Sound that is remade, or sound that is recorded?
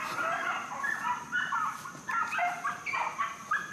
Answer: recorded